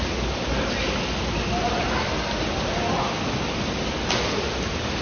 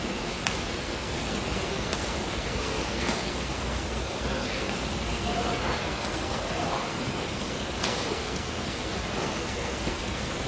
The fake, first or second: second